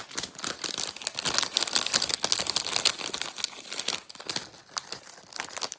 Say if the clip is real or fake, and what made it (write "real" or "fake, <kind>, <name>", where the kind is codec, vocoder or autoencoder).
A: real